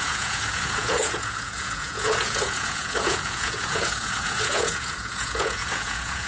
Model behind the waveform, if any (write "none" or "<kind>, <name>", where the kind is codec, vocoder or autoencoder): vocoder, Vocos